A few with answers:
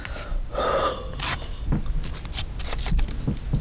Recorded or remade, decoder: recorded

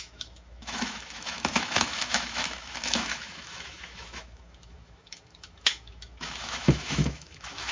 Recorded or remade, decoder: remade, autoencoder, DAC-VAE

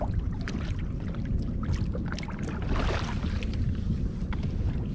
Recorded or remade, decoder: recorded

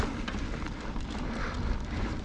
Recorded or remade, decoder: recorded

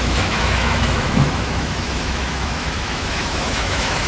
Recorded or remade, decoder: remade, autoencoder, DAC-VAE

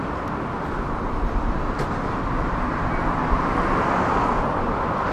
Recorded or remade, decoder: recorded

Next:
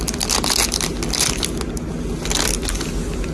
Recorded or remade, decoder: recorded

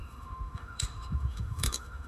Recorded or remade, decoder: remade, autoencoder, DAC-VAE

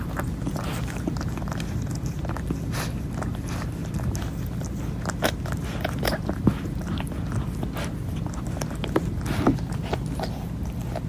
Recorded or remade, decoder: recorded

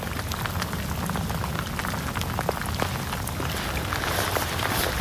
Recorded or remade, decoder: recorded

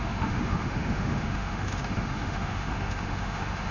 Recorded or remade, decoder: remade, autoencoder, DAC-VAE